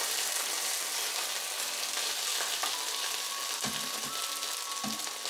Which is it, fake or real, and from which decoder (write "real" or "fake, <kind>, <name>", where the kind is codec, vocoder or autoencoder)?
real